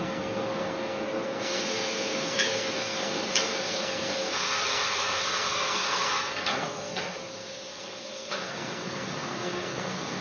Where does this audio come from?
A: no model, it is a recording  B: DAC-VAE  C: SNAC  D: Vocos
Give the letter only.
C